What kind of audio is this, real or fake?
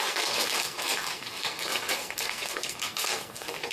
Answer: fake